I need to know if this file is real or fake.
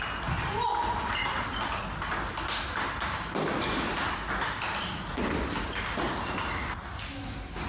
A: real